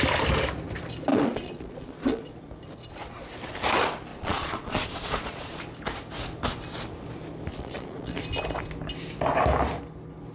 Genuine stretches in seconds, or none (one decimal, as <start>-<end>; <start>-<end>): 0.0-1.1; 2.4-4.1; 5.6-7.5; 8.2-10.3